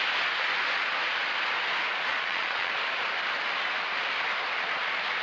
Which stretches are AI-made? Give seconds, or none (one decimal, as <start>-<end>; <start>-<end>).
2.1-2.7